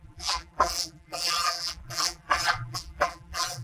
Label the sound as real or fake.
fake